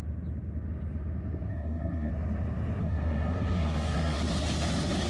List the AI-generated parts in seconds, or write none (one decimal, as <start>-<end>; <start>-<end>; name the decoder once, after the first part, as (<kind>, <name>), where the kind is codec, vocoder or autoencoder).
1.5-2.1 (codec, SNAC); 2.8-4.3